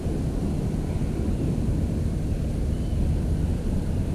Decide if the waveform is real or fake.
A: real